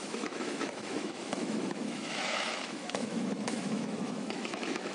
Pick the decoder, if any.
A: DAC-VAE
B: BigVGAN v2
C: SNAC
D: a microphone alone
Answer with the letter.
A